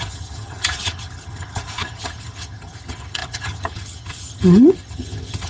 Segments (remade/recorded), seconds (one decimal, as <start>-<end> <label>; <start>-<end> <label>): 0.0-5.5 remade